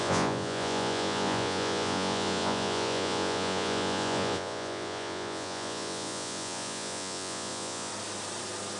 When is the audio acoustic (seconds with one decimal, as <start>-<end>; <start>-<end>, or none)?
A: 7.9-8.8